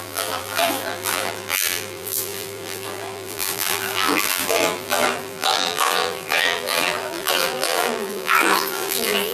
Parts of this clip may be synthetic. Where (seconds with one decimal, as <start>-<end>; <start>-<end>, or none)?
0.0-9.3